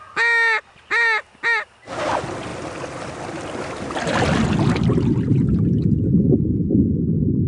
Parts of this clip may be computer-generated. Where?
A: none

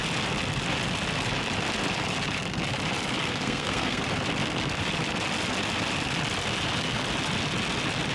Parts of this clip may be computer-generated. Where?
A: 3.2-4.0 (codec, SNAC)

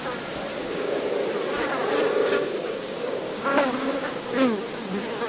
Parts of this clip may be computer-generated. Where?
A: 0.5-1.1 (codec, DAC); 2.2-4.3

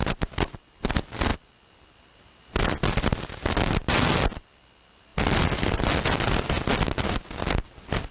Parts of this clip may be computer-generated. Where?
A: none

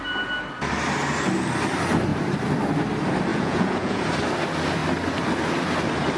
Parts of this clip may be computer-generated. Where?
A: 3.3-4.0 (vocoder, Vocos)

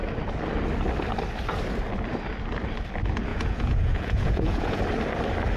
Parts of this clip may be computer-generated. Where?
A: 3.3-4.8 (vocoder, Vocos)